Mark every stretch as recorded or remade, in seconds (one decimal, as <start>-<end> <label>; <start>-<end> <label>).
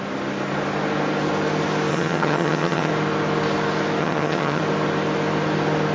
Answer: 0.0-1.9 recorded; 1.9-2.9 remade; 2.9-4.0 recorded; 4.0-4.6 remade; 4.6-5.9 recorded